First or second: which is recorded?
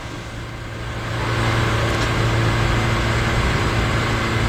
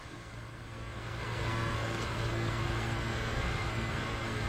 first